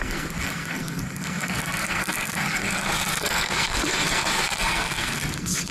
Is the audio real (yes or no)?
no